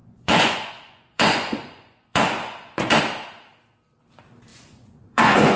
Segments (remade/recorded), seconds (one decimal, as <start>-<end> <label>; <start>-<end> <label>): 0.0-3.0 remade; 3.0-4.5 recorded; 4.5-5.6 remade